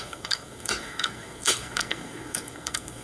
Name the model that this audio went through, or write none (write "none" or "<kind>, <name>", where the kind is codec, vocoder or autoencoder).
codec, SNAC